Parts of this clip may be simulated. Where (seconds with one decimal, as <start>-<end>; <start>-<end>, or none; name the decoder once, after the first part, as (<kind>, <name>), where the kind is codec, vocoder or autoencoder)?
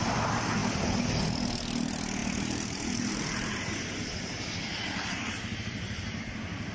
2.2-6.2 (vocoder, BigVGAN v2)